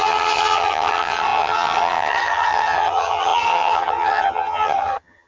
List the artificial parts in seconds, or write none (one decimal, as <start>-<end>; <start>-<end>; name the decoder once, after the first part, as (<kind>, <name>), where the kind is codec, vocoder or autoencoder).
0.0-5.3 (vocoder, HiFi-GAN)